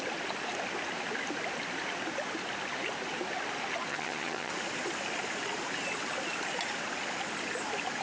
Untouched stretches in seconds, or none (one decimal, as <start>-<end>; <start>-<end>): 0.0-3.9; 4.5-8.0